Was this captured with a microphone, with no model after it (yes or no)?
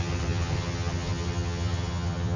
no